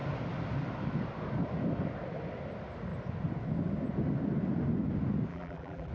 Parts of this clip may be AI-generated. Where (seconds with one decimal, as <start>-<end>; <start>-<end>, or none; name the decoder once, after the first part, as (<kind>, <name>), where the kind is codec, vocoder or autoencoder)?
5.3-5.9 (vocoder, BigVGAN v2)